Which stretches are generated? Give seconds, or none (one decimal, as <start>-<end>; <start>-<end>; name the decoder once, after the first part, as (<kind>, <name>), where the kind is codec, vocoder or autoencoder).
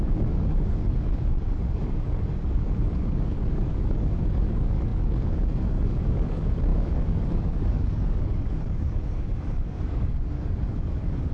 0.0-11.3 (codec, DAC)